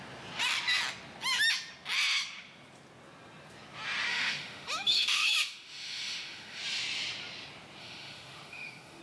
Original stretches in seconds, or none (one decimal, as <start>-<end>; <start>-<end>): 0.0-4.1; 6.6-7.8